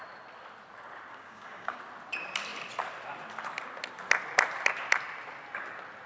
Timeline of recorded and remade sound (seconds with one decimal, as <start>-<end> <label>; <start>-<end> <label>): 0.0-1.1 recorded; 1.1-1.8 remade; 1.8-6.1 recorded